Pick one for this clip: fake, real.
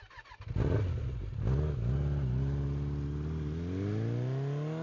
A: real